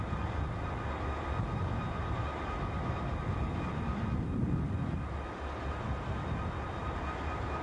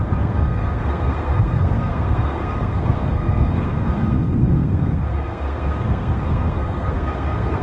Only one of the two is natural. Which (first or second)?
first